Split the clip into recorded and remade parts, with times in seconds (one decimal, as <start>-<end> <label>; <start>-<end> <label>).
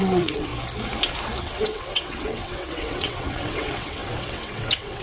0.0-0.5 remade; 0.5-1.4 recorded; 1.4-5.0 remade